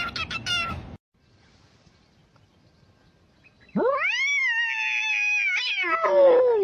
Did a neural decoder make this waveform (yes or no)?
no